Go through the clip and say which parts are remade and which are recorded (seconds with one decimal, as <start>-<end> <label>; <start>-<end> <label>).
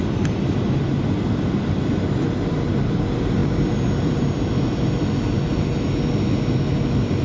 0.0-7.2 recorded